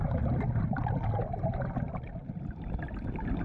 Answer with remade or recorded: recorded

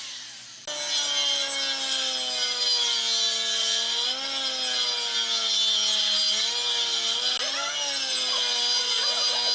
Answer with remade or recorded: recorded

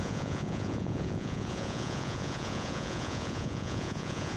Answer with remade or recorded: remade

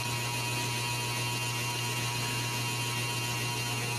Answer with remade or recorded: recorded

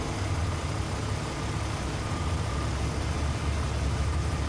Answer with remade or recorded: recorded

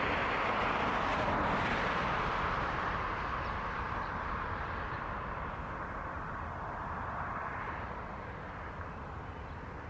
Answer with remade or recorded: recorded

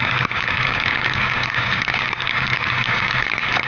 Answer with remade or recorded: remade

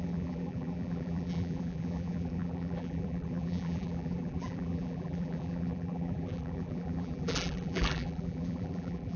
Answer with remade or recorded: remade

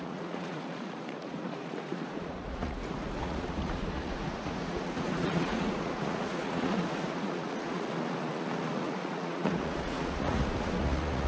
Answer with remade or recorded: remade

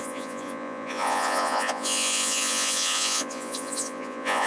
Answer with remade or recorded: remade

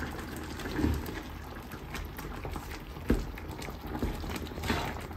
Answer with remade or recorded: recorded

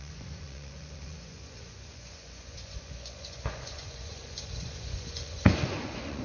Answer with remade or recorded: remade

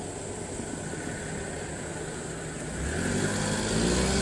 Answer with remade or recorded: recorded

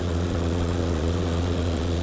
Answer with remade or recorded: remade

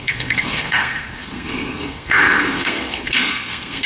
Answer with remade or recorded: remade